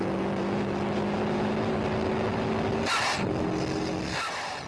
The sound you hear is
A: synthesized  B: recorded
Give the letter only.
B